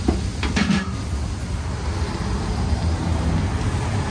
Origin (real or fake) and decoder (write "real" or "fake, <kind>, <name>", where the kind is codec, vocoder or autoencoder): real